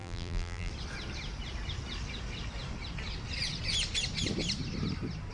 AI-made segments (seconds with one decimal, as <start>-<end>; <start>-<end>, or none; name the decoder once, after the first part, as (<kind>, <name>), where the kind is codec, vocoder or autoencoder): 0.0-0.7 (vocoder, BigVGAN v2)